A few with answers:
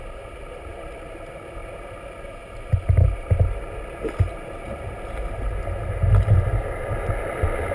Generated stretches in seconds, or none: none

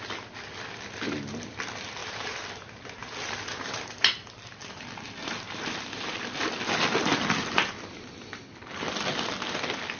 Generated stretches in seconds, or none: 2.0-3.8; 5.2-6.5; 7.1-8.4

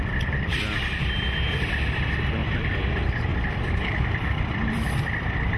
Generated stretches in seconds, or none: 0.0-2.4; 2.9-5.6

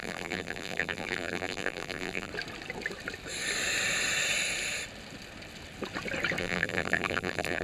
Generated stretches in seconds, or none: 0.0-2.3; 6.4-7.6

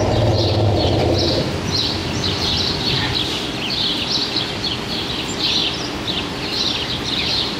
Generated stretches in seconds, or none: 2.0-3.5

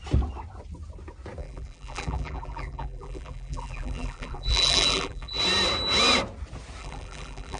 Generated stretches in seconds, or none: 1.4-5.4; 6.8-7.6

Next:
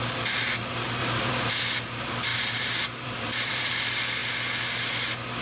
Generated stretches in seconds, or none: 1.0-1.5; 2.3-3.7